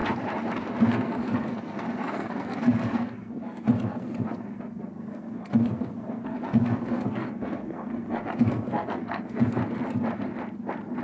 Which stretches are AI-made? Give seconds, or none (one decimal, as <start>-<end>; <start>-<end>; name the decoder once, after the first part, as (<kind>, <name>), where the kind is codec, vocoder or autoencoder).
0.8-9.6 (codec, SNAC)

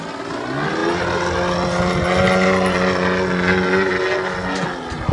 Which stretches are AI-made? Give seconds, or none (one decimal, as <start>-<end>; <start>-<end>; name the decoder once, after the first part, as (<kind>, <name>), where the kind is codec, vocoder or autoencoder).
none

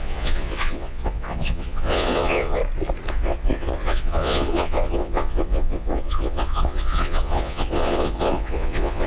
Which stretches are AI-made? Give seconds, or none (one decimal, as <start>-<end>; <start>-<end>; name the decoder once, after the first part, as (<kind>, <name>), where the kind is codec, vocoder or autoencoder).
0.0-2.6 (vocoder, Vocos); 3.1-9.1

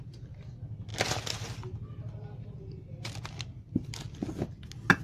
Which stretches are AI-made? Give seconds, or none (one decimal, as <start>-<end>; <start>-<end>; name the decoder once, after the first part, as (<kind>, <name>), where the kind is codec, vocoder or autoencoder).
none

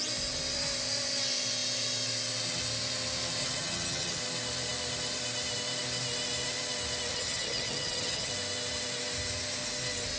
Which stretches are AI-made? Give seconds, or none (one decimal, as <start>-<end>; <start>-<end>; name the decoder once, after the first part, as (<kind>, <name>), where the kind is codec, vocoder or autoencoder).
3.4-4.2 (vocoder, HiFi-GAN); 7.1-8.3

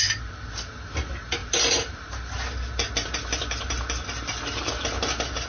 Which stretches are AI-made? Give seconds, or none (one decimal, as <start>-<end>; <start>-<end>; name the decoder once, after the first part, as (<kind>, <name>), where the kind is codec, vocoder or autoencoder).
none